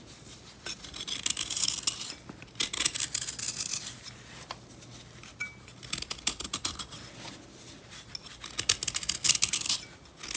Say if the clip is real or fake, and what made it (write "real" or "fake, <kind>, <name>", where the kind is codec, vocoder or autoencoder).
real